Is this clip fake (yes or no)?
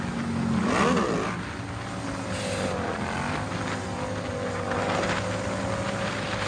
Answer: no